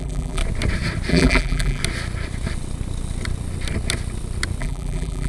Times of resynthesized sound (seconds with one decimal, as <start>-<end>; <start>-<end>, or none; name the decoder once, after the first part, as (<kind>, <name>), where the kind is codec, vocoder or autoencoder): 0.0-0.4 (vocoder, BigVGAN v2); 1.1-1.8; 4.6-5.3